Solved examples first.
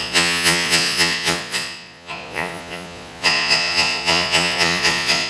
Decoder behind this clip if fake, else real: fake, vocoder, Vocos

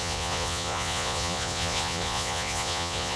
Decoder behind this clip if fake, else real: fake, vocoder, Vocos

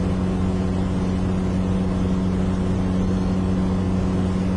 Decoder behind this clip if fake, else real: real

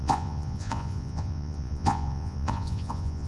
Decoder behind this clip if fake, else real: fake, vocoder, Vocos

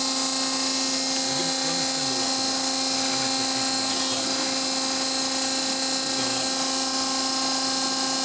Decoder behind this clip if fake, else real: real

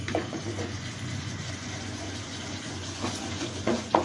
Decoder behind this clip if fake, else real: fake, vocoder, Vocos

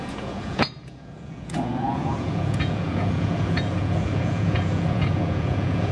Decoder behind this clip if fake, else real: fake, vocoder, Vocos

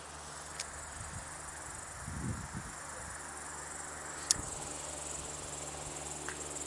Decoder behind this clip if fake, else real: real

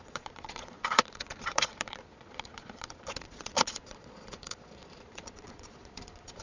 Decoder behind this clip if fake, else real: fake, vocoder, Vocos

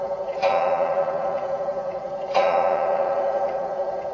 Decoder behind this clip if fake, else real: fake, vocoder, Vocos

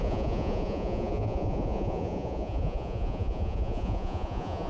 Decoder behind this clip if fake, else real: fake, vocoder, Vocos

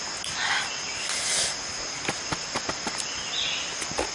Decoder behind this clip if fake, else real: real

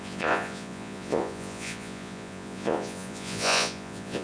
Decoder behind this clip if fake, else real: fake, vocoder, Vocos